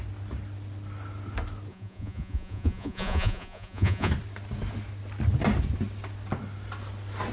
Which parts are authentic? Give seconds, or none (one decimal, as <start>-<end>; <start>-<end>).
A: 0.0-1.7; 4.1-7.3